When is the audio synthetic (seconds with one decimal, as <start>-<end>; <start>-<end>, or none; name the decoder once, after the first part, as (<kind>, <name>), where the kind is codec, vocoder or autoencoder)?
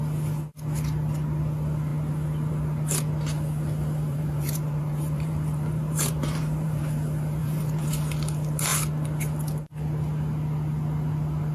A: 4.1-6.8 (vocoder, BigVGAN v2); 7.4-7.9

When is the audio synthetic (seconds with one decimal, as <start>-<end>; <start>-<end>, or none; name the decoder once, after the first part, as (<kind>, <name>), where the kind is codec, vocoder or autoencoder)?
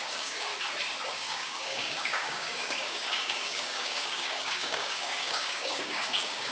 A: 0.0-0.5 (codec, DAC); 1.1-6.5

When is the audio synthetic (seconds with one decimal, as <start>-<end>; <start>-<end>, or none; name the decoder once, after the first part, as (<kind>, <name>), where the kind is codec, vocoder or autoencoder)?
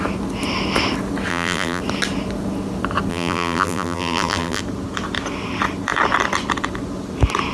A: 1.3-1.8 (vocoder, BigVGAN v2); 3.1-4.6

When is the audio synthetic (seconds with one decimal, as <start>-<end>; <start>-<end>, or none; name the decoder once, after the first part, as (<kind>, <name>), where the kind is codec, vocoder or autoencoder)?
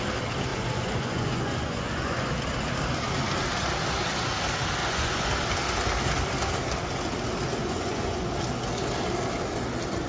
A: 0.5-2.3 (vocoder, Vocos); 4.8-5.3; 7.6-8.3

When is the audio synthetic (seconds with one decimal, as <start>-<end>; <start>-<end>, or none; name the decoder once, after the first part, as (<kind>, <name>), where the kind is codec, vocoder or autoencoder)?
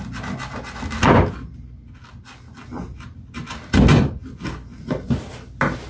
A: none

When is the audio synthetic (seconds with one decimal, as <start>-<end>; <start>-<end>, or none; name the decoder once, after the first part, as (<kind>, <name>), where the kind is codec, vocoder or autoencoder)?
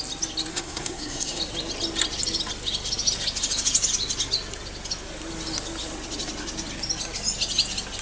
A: 0.5-1.4 (codec, SNAC)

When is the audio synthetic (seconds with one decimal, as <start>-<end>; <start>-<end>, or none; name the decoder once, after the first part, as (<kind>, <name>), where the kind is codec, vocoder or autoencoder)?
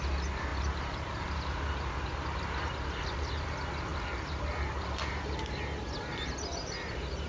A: none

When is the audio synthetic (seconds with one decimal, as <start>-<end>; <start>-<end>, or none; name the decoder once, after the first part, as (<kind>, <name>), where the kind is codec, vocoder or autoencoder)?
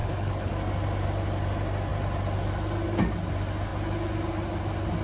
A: 0.0-0.5 (codec, HILCodec)